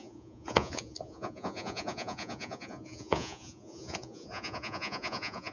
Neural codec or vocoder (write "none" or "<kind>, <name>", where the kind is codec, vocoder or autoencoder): vocoder, Vocos